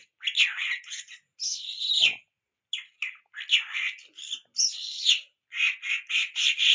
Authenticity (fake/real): real